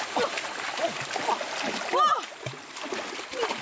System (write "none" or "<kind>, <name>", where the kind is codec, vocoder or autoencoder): none